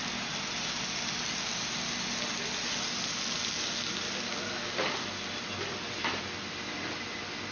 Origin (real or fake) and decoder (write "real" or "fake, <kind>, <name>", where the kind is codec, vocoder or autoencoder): real